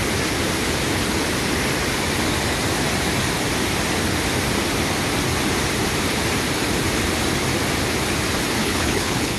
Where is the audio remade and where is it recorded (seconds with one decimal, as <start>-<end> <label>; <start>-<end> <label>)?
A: 0.0-8.6 recorded; 8.6-9.4 remade